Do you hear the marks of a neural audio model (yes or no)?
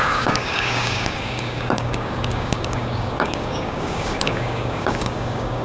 yes